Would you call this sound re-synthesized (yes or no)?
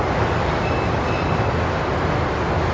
no